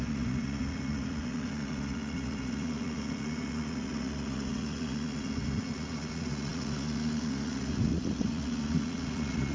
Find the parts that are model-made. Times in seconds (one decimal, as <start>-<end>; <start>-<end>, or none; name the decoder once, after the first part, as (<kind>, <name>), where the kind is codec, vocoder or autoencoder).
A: 0.0-9.5 (vocoder, Vocos)